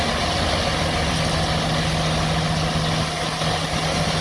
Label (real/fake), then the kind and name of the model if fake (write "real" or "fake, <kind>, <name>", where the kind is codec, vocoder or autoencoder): real